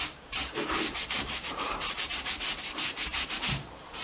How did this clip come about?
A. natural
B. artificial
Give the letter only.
B